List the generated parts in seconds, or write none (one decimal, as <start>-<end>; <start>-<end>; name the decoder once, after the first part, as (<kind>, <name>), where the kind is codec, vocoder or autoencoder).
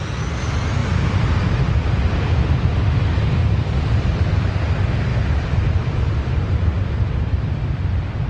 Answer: 5.1-7.6 (vocoder, BigVGAN v2)